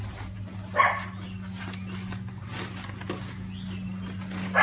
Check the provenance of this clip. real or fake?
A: real